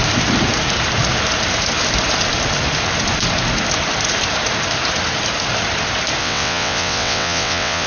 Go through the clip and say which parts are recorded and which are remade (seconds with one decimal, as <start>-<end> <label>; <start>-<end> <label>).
0.0-6.2 recorded; 6.2-7.9 remade